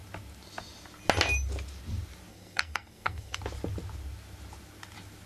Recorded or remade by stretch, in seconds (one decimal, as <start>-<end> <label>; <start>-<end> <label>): 0.0-2.3 recorded; 2.3-3.4 remade; 3.4-5.3 recorded